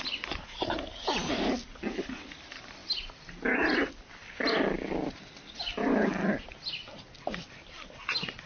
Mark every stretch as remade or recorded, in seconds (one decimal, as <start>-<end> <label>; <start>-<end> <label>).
0.0-8.5 recorded